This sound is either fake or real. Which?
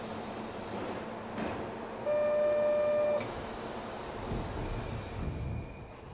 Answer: real